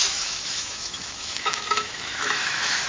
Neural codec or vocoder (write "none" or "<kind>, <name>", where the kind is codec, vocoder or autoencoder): autoencoder, DAC-VAE